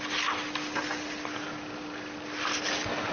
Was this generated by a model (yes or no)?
no